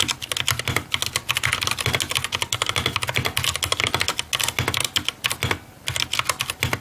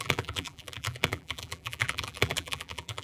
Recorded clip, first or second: first